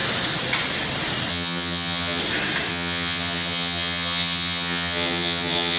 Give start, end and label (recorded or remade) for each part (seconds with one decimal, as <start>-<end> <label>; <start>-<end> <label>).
0.0-1.3 recorded; 1.3-2.2 remade; 2.2-2.7 recorded; 2.7-5.8 remade